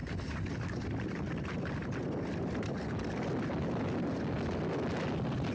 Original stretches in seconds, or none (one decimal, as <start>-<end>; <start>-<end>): 0.0-5.5